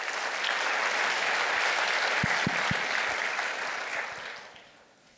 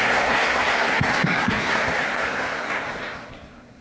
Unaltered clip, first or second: first